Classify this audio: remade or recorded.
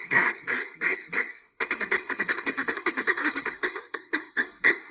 remade